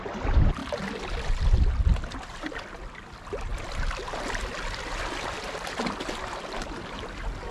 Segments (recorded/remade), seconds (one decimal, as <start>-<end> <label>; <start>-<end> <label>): 0.0-7.5 recorded